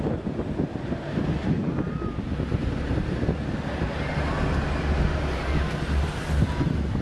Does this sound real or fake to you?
real